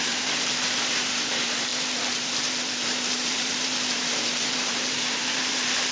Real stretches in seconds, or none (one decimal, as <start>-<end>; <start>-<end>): none